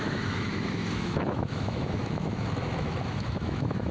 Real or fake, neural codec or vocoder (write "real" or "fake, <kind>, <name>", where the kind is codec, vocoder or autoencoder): fake, autoencoder, DAC-VAE